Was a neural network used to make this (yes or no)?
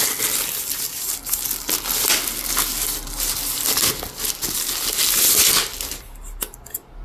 no